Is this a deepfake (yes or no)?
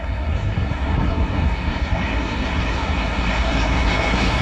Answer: yes